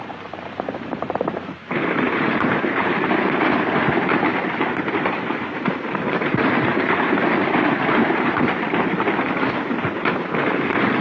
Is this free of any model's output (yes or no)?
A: no